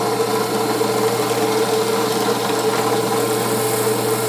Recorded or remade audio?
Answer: recorded